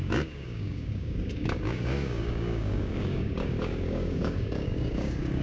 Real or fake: fake